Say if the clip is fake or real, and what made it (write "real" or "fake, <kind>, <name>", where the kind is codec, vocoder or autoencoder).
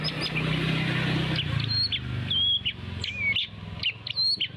real